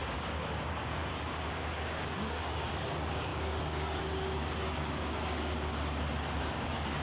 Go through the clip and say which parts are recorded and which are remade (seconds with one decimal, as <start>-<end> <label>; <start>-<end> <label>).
0.0-5.5 remade; 5.5-6.4 recorded; 6.4-7.0 remade